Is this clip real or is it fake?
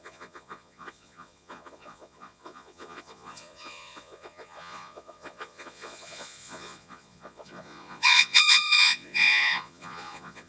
fake